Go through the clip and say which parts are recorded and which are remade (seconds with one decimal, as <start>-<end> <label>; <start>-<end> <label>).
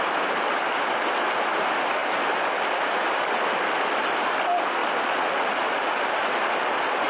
0.0-7.1 recorded